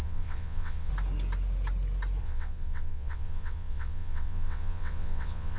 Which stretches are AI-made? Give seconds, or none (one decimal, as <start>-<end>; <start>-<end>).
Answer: 0.0-0.9; 2.2-5.6